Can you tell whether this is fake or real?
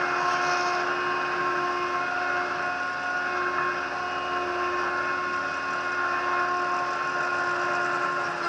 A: real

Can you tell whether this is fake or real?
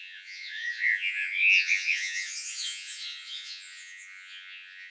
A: fake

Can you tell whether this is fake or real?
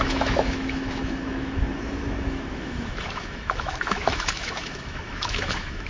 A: fake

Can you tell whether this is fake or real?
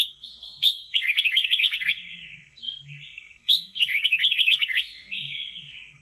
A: fake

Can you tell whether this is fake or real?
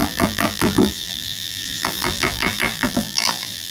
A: fake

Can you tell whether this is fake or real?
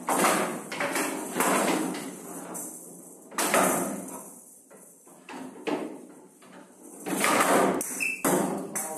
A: real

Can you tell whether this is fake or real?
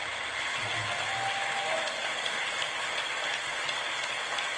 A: real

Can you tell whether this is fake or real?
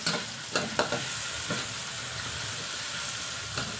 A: real